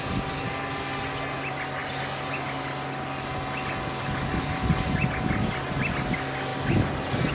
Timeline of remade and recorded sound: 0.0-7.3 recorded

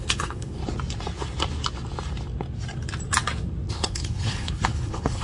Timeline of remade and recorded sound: 0.0-0.6 remade; 0.6-3.7 recorded; 3.7-5.2 remade

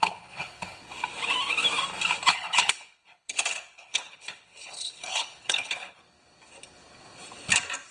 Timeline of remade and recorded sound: 0.0-0.8 remade; 0.8-2.3 recorded; 2.3-6.0 remade; 6.0-7.9 recorded

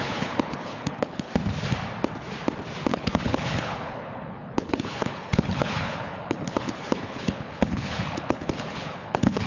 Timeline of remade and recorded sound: 0.0-1.3 remade; 1.3-2.9 recorded; 2.9-9.5 remade